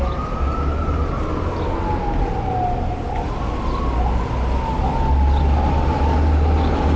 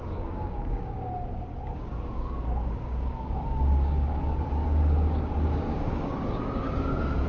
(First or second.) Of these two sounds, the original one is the first